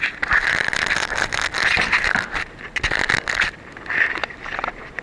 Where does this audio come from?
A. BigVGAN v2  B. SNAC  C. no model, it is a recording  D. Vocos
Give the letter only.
C